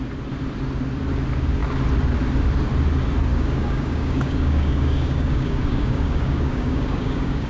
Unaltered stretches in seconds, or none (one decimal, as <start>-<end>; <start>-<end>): 0.0-3.3